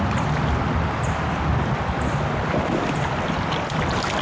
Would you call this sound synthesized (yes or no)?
no